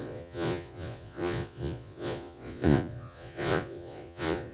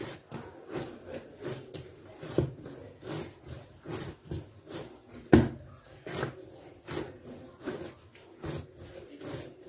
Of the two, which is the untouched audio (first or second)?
second